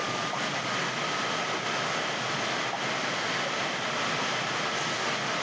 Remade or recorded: remade